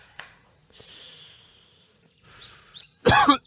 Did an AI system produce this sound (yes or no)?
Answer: yes